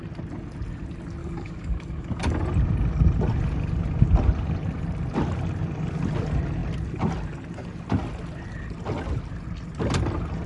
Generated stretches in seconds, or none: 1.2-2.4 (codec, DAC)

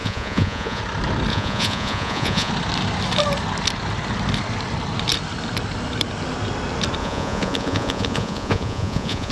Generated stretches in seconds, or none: 0.0-0.8 (vocoder, Vocos); 1.3-2.5; 7.0-9.3

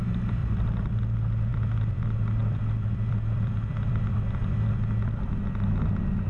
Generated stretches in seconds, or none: 0.4-0.9 (vocoder, BigVGAN v2); 1.5-5.3

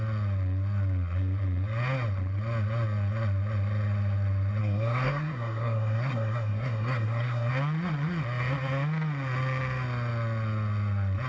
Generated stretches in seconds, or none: 4.6-7.5 (codec, SNAC)

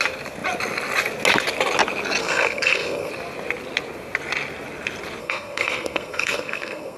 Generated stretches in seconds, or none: 2.2-3.1 (codec, SNAC); 5.2-7.0